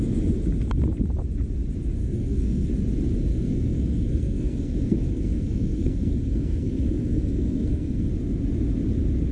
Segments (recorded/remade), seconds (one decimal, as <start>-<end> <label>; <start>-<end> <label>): 0.0-2.0 recorded; 2.0-2.7 remade; 2.7-3.3 recorded; 3.3-8.1 remade; 8.1-9.3 recorded